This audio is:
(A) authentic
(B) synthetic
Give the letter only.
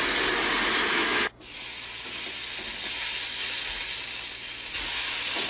A